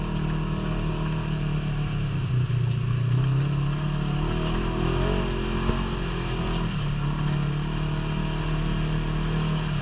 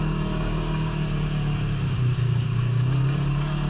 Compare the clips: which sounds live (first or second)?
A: first